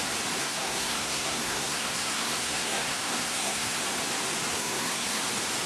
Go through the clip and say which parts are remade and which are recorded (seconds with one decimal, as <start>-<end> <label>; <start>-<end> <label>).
0.0-0.4 recorded; 0.4-3.8 remade; 3.8-4.5 recorded; 4.5-5.2 remade; 5.2-5.7 recorded